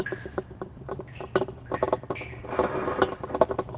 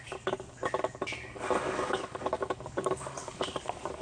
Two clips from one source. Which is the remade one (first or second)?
second